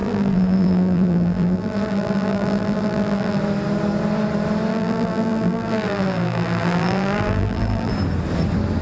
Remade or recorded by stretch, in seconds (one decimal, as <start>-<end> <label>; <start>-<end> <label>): 0.0-3.4 remade; 3.4-4.7 recorded; 4.7-7.9 remade; 7.9-8.8 recorded